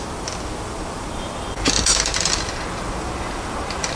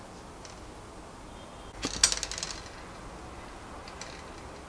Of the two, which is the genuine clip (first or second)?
second